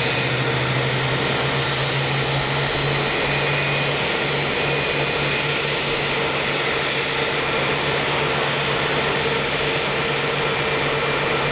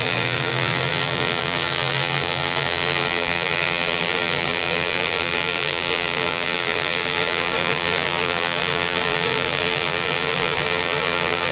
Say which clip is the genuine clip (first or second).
first